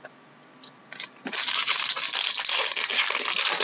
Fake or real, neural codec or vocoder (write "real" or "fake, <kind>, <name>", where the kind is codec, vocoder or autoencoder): real